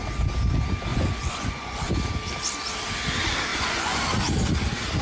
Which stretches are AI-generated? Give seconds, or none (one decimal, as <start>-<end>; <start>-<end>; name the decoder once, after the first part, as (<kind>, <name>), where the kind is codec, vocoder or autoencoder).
0.9-1.9 (vocoder, Vocos); 3.5-4.0